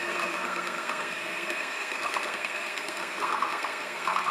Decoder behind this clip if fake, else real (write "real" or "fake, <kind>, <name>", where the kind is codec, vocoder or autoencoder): fake, codec, SNAC